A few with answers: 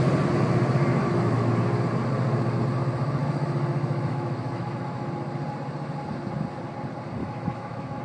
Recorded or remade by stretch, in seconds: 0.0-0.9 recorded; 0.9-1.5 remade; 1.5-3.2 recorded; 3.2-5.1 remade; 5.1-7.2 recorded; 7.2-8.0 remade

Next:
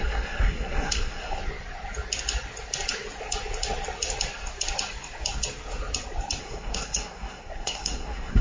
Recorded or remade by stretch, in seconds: 0.0-1.4 remade; 1.4-6.4 recorded; 6.4-8.4 remade

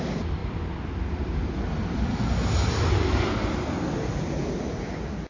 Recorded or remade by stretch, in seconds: 0.0-5.3 recorded

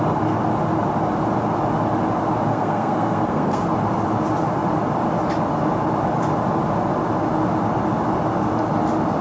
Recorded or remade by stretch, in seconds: 0.0-2.5 recorded; 2.5-3.7 remade; 3.7-9.2 recorded

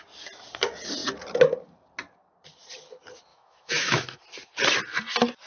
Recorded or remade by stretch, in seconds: 0.0-3.3 recorded; 3.3-4.2 remade; 4.2-5.5 recorded